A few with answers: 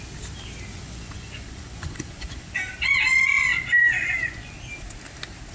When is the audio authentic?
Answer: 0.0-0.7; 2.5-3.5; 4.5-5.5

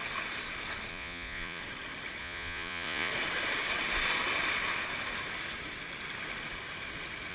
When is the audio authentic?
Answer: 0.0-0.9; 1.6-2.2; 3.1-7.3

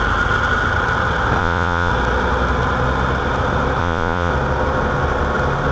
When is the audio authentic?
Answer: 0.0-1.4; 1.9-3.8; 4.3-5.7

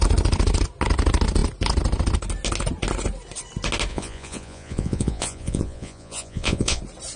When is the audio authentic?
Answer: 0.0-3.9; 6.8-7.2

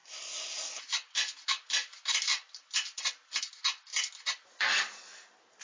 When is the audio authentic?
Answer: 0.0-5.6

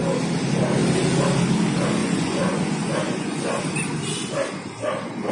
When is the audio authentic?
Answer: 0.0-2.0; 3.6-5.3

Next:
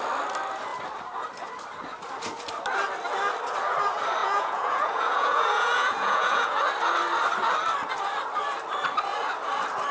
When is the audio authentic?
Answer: 0.0-4.2; 6.6-9.9